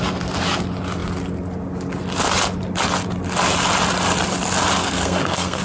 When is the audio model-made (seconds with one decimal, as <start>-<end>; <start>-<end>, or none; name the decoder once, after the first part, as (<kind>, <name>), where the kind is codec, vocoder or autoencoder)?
4.8-5.6 (codec, SNAC)